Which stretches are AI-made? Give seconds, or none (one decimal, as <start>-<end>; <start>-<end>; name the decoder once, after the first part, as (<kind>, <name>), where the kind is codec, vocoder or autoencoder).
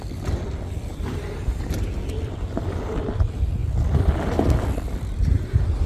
0.9-1.8 (vocoder, BigVGAN v2); 5.1-5.9